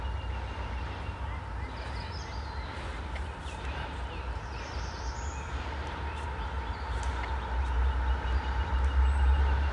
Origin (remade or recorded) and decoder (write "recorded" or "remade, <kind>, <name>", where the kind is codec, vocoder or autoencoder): recorded